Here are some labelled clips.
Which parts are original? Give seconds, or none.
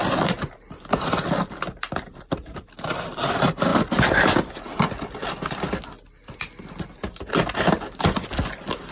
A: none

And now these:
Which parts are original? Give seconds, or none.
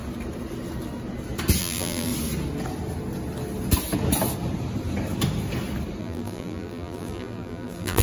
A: 0.0-1.6; 2.1-6.0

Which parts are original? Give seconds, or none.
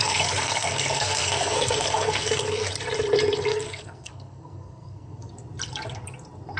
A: 2.7-3.5; 5.3-6.6